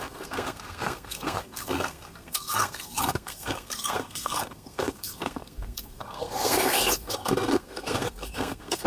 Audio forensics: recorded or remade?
remade